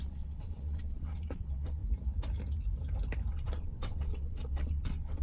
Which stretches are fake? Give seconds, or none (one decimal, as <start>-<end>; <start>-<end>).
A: 0.0-1.8; 3.3-5.2